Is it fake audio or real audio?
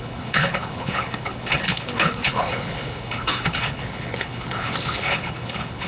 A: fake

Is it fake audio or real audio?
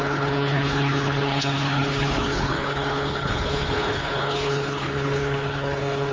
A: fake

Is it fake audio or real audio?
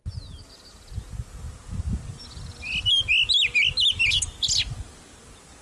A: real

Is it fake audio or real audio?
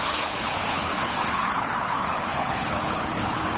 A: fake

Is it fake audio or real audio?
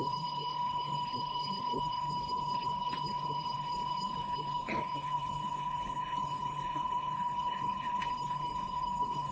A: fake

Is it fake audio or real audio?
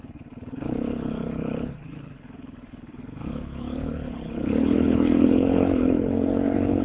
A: fake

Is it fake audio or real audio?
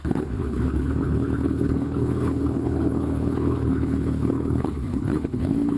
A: fake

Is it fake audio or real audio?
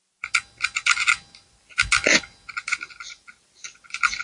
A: real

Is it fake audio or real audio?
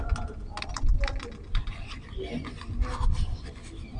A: real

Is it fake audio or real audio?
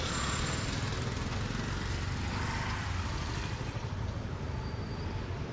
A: real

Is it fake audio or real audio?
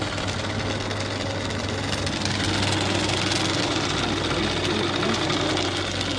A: real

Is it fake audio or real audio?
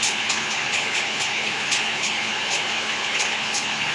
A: fake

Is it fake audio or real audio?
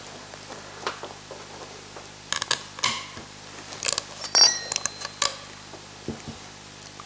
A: real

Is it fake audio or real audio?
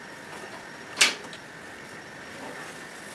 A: real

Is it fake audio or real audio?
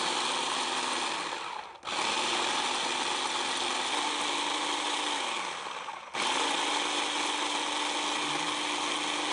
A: real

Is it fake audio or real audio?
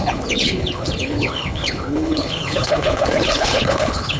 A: fake